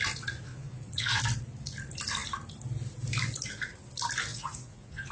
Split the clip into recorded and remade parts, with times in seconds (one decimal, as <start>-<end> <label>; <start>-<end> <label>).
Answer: 0.0-0.5 recorded; 0.5-1.2 remade; 1.2-4.3 recorded; 4.3-5.1 remade